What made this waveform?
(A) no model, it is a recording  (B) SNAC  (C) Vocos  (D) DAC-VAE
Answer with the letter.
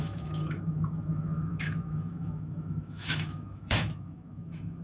D